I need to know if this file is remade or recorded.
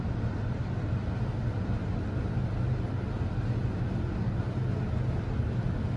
recorded